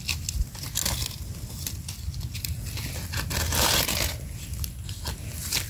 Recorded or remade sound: recorded